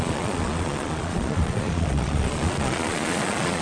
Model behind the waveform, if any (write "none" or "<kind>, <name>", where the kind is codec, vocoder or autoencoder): vocoder, Vocos